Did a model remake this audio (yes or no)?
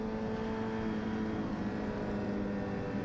no